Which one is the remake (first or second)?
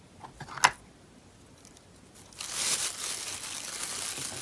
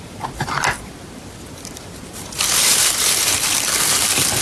second